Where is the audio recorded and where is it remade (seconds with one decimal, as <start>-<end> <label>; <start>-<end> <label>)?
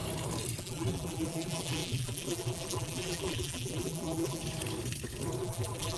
0.0-0.6 recorded; 0.6-4.4 remade; 4.4-5.4 recorded; 5.4-6.0 remade